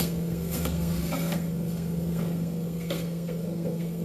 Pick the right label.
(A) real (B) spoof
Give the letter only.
B